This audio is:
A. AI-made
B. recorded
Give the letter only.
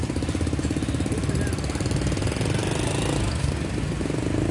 B